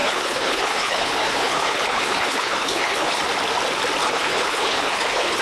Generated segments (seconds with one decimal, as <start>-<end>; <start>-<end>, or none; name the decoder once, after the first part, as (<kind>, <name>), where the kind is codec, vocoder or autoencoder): 0.0-3.2 (codec, HILCodec); 4.0-5.4